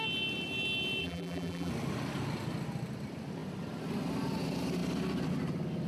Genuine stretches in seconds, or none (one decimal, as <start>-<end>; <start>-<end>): 0.0-1.0; 1.7-5.9

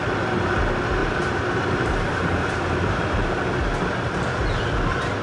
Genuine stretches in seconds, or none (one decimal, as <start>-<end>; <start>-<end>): 0.0-1.0; 3.0-5.2

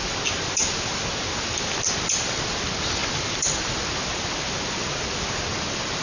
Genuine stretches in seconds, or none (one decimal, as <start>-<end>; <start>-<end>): 0.0-6.0

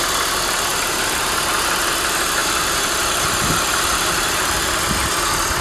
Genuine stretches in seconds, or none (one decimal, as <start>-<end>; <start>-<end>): 0.0-0.7; 1.5-2.4; 4.8-5.6

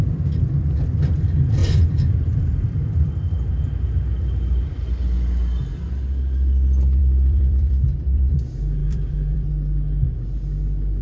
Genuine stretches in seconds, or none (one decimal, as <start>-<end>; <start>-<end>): 0.0-1.6; 3.1-7.0; 8.4-8.8; 9.5-11.0